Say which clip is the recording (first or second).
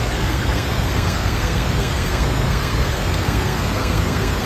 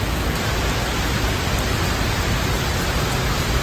second